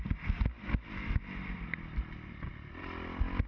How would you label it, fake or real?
real